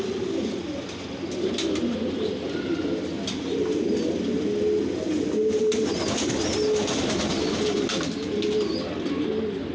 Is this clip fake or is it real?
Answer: real